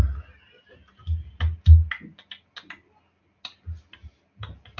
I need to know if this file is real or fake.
real